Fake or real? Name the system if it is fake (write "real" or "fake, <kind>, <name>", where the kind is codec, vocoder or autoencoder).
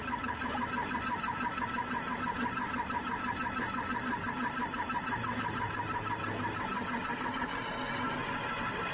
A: real